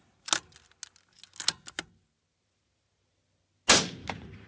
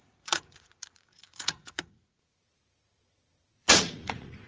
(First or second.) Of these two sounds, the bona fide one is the first